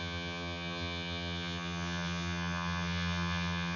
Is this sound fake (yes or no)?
yes